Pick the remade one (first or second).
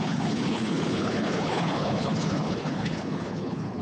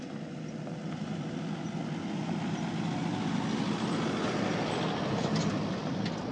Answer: first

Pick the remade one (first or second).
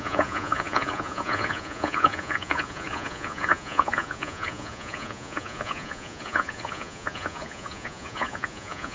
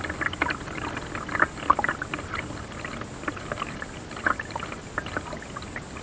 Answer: first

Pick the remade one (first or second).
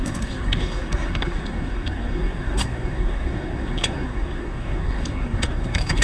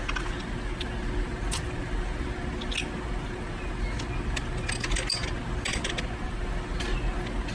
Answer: first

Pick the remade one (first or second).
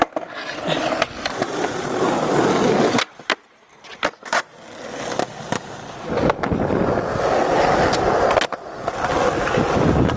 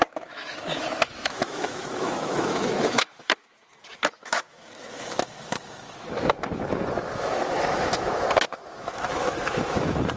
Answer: second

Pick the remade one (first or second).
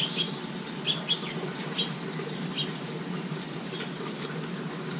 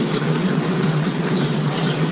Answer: second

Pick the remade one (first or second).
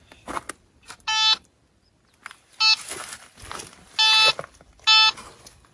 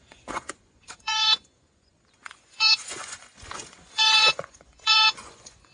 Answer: second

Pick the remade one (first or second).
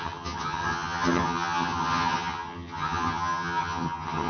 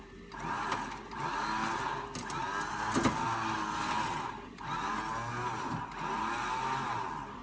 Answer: first